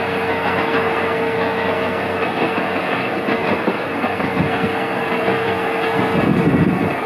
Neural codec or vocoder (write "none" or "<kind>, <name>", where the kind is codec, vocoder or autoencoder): codec, SNAC